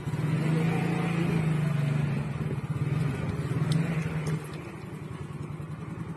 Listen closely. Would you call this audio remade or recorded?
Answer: recorded